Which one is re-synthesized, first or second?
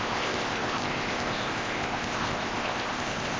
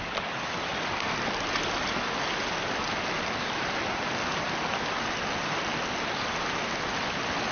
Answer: first